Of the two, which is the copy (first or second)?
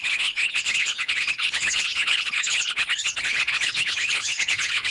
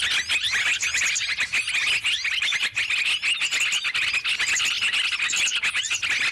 first